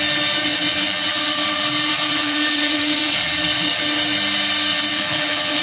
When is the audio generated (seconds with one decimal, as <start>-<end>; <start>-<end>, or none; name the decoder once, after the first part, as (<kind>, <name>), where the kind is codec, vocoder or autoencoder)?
0.4-3.8 (vocoder, WaveNeXt); 4.7-5.6